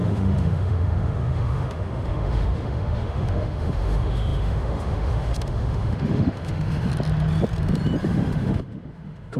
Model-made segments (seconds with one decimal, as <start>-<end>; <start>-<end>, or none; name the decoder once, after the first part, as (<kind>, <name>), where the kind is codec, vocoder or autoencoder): 0.0-6.9 (autoencoder, DAC-VAE); 8.0-9.4